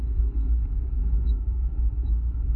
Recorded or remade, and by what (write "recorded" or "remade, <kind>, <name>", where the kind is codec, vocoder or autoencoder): remade, codec, SNAC